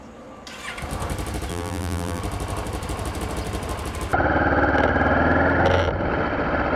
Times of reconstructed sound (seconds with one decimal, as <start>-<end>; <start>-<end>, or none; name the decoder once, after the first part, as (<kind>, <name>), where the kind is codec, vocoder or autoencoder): 1.5-2.2 (vocoder, BigVGAN v2)